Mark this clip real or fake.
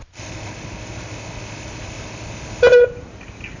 real